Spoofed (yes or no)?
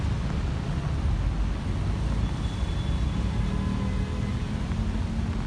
no